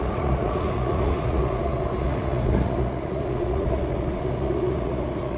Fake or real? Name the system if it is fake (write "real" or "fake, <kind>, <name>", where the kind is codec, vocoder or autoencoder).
fake, vocoder, Vocos